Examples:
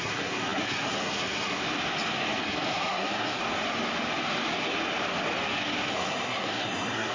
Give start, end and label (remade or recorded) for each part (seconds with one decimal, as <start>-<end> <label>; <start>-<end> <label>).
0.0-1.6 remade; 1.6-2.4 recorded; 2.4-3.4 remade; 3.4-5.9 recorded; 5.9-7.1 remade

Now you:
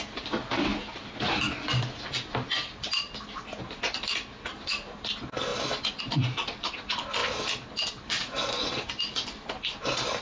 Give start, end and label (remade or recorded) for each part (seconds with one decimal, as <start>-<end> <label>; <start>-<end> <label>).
0.0-10.2 recorded

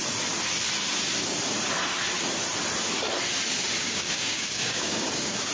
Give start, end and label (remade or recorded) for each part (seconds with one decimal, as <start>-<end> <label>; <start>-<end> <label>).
0.0-3.8 recorded; 3.8-5.5 remade